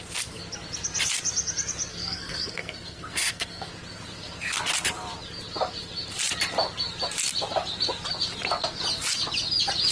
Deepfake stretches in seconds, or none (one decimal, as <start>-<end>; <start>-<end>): 1.9-3.7